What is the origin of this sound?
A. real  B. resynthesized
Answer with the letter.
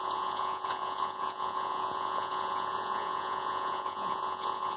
B